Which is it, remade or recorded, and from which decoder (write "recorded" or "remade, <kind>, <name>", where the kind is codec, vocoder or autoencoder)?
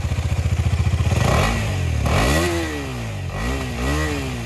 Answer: recorded